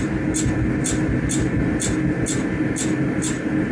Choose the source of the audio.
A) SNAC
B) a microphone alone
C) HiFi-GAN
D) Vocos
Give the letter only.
B